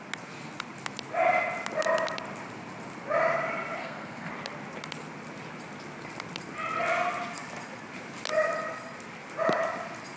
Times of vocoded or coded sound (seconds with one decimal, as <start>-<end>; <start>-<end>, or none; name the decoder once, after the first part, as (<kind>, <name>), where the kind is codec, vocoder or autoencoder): 3.8-4.3 (codec, SNAC)